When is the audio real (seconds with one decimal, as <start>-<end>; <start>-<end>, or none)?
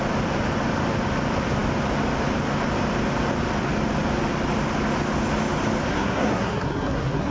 0.0-5.9